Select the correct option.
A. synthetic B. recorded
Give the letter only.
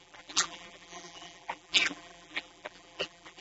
A